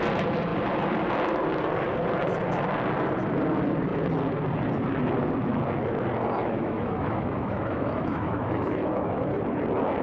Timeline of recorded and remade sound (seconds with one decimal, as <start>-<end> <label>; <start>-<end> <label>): 0.0-6.4 recorded; 6.4-9.3 remade; 9.3-10.0 recorded